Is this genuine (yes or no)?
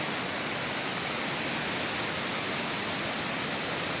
yes